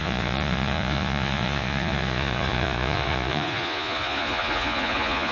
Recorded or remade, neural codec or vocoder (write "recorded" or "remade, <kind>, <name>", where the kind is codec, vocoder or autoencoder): remade, vocoder, Vocos